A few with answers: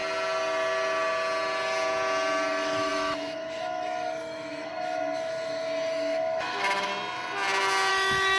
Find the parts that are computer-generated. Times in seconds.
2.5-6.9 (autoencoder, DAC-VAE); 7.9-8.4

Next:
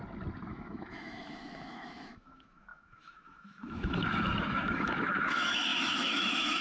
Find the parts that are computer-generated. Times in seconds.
0.5-6.6 (autoencoder, DAC-VAE)

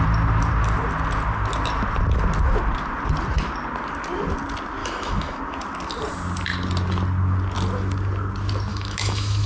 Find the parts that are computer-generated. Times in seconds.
4.8-5.4 (autoencoder, DAC-VAE); 8.7-9.5

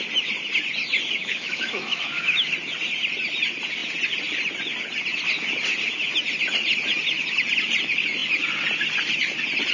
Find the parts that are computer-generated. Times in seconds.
1.2-2.5 (autoencoder, DAC-VAE)

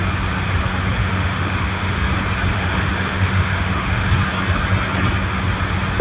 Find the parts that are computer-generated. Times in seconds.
1.0-2.1 (autoencoder, DAC-VAE); 2.5-4.1

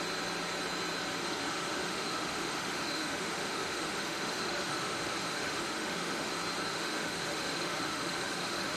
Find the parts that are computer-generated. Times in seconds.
1.2-6.3 (autoencoder, DAC-VAE); 6.7-8.8

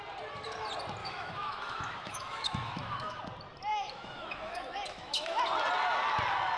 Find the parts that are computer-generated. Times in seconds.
1.0-3.2 (autoencoder, DAC-VAE); 3.7-5.4